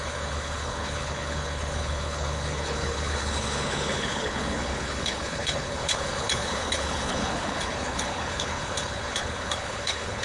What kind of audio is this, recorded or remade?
remade